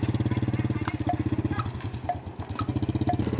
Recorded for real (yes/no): yes